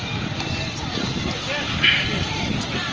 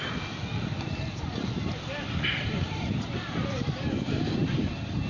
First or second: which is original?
first